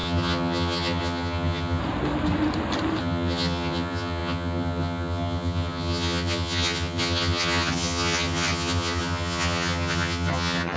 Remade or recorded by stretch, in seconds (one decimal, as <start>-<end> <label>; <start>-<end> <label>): 0.0-1.8 remade; 1.8-3.0 recorded; 3.0-10.8 remade